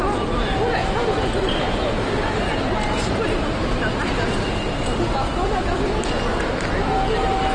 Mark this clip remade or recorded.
recorded